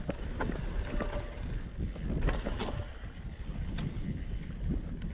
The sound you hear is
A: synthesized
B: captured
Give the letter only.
B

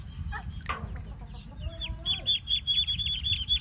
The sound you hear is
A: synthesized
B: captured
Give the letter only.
B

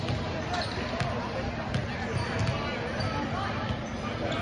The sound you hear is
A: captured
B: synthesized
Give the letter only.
A